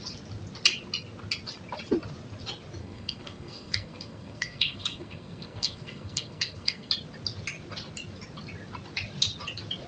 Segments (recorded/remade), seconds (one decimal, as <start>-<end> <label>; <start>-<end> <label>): 0.0-2.8 recorded; 2.8-6.9 remade; 6.9-9.9 recorded